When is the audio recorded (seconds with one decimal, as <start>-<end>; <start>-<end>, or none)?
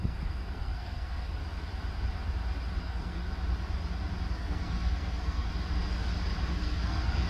1.4-2.8; 3.2-4.3; 5.5-6.5